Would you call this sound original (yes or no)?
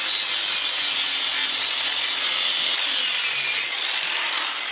yes